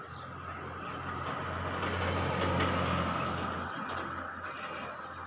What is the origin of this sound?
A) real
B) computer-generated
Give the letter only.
A